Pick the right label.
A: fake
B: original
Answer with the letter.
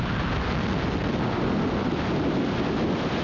B